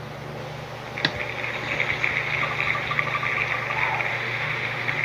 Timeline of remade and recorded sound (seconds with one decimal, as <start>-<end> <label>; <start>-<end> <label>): 0.0-4.1 recorded; 4.1-5.0 remade